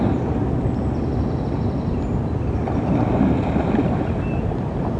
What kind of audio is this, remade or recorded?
recorded